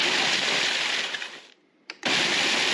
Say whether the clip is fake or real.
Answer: fake